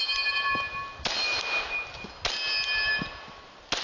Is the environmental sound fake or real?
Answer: real